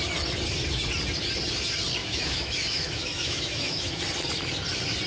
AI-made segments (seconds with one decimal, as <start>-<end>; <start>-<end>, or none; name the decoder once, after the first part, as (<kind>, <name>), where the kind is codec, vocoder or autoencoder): 2.0-4.0 (autoencoder, DAC-VAE)

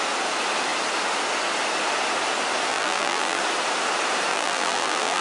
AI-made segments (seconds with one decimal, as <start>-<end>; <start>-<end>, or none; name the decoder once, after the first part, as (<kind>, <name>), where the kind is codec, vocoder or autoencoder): 2.7-3.4 (vocoder, BigVGAN v2); 4.3-5.2

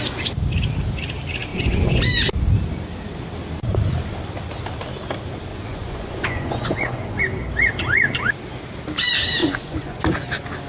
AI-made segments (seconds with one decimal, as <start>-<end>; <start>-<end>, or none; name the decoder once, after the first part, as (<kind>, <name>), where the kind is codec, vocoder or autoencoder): 1.5-2.0 (vocoder, Vocos); 5.5-7.2; 9.4-10.0

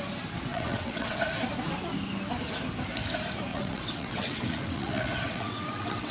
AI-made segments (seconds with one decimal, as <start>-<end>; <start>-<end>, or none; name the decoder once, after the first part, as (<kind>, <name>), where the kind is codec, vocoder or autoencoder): 0.5-1.2 (vocoder, WaveNeXt); 3.5-6.1